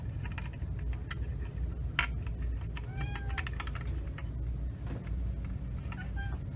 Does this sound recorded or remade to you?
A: recorded